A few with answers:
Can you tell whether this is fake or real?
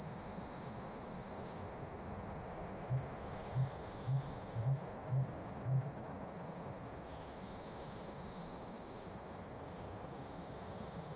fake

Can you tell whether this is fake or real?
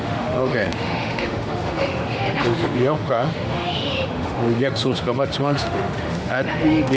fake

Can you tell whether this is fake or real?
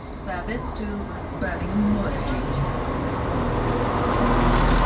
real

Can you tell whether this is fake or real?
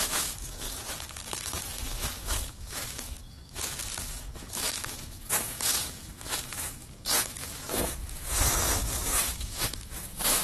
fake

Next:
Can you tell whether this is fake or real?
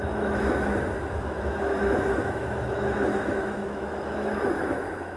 fake